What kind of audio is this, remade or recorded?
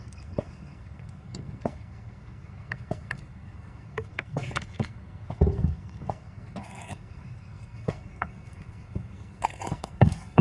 remade